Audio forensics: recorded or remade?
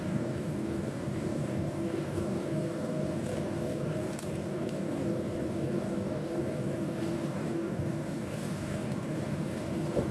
remade